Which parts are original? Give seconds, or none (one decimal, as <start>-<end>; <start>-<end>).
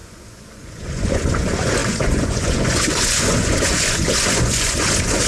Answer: none